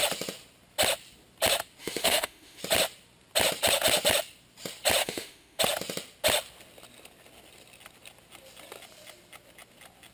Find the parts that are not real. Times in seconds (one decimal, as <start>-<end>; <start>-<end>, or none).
1.8-2.6; 5.0-5.6